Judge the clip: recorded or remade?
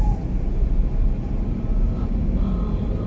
recorded